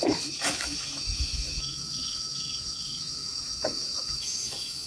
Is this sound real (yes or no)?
no